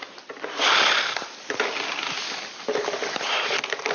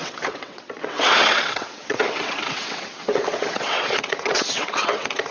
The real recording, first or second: first